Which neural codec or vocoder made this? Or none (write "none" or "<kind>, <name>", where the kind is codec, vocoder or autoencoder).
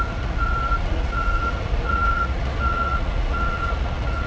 vocoder, Vocos